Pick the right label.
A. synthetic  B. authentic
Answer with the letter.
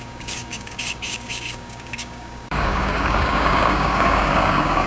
A